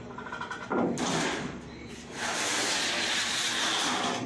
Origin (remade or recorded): recorded